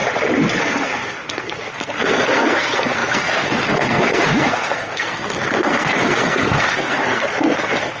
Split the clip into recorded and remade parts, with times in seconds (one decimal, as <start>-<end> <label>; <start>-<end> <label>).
0.0-0.6 recorded; 0.6-8.0 remade